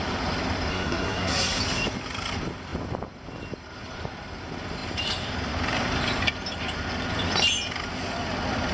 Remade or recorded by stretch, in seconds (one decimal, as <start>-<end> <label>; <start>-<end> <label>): 0.0-0.7 recorded; 0.7-1.6 remade; 1.6-8.7 recorded